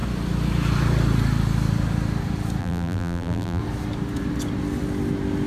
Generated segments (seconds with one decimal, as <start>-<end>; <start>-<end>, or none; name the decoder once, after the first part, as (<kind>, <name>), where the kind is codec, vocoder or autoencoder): 2.6-3.6 (vocoder, BigVGAN v2)